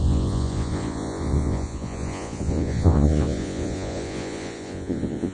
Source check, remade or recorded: remade